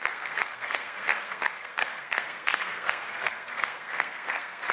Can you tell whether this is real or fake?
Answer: fake